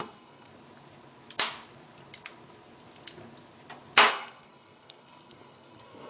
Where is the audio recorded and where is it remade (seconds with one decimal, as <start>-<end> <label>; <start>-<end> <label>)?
0.0-0.5 remade; 0.5-4.1 recorded; 4.1-6.1 remade